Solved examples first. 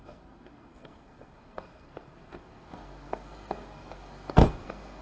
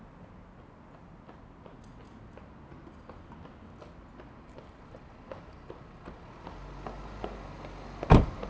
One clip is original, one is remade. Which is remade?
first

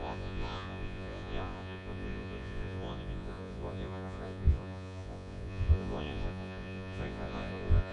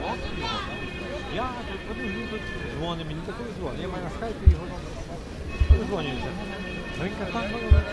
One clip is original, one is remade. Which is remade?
first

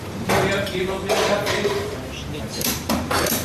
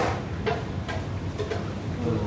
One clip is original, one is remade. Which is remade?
first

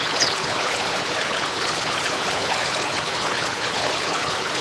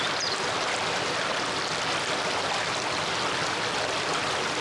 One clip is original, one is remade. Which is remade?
first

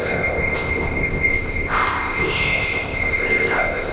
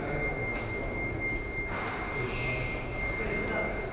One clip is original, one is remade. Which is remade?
first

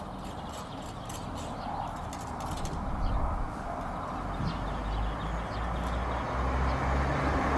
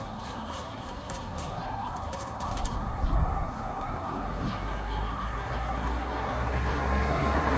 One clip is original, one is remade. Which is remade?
second